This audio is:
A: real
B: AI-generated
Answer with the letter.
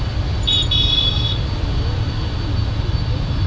A